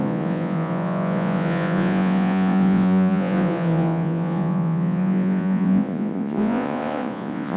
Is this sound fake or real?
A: fake